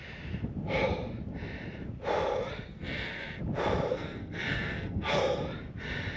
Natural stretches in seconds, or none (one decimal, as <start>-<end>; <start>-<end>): 0.0-2.7; 3.4-3.9; 5.2-6.2

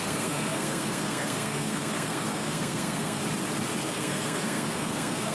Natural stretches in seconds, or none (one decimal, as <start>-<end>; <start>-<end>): 3.2-3.8

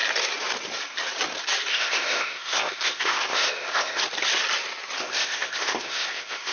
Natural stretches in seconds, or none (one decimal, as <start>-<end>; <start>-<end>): 0.0-1.7; 4.0-5.0